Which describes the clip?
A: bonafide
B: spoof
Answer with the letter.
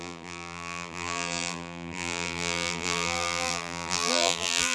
B